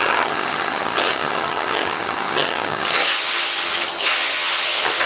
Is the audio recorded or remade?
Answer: remade